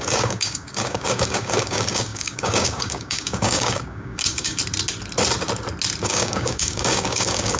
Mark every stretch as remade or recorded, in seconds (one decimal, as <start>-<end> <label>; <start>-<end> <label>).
0.0-4.6 remade; 4.6-6.0 recorded; 6.0-7.6 remade